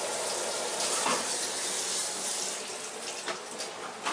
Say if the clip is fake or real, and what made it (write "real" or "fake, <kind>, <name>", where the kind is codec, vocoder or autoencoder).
real